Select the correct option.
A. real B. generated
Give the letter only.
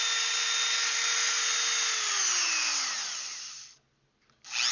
A